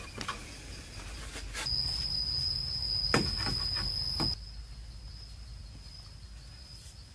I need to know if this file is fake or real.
real